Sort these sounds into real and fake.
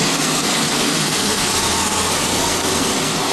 fake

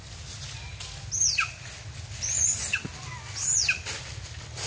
real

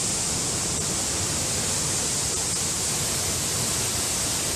real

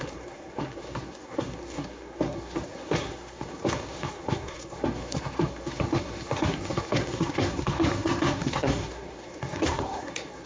fake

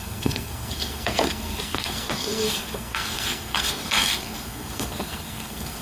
fake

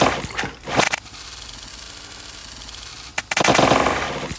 real